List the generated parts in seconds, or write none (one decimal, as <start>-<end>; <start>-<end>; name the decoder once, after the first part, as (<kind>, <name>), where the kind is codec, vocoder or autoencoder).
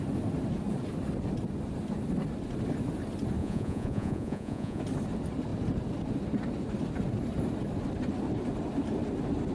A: 3.4-4.8 (vocoder, Vocos)